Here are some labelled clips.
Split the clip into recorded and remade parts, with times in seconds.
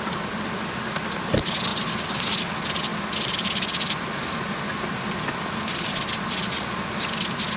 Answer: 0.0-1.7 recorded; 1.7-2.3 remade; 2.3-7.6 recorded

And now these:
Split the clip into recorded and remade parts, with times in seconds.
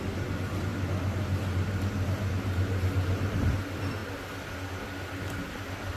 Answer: 0.0-6.0 recorded